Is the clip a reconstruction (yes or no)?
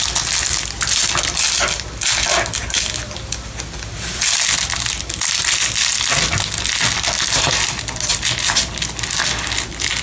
no